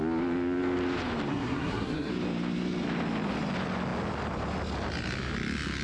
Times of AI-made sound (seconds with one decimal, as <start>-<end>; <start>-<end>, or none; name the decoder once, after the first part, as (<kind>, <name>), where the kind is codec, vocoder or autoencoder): 1.3-2.1 (codec, SNAC)